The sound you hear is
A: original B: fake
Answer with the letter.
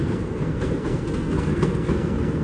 B